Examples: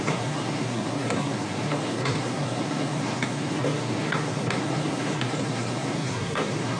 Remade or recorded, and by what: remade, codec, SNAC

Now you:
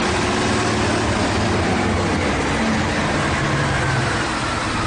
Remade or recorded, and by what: recorded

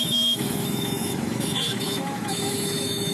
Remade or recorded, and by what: remade, autoencoder, DAC-VAE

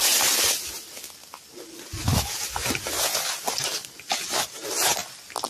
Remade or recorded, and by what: recorded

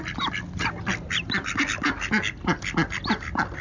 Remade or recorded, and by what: recorded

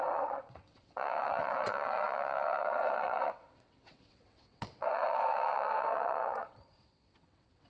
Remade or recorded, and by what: remade, vocoder, WaveNeXt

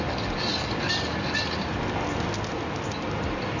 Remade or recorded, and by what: recorded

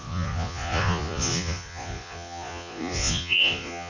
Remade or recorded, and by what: remade, vocoder, Vocos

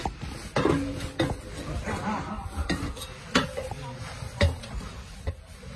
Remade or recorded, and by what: recorded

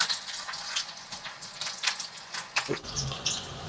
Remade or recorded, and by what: remade, vocoder, Vocos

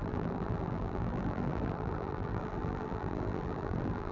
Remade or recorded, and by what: remade, vocoder, BigVGAN v2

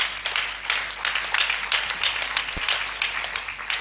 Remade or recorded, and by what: recorded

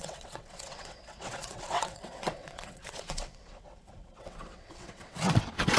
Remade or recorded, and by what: remade, vocoder, WaveNeXt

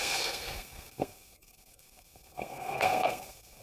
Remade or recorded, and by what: remade, codec, SNAC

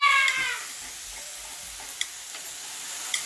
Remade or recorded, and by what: recorded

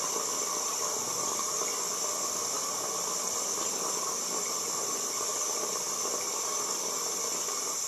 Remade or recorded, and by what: recorded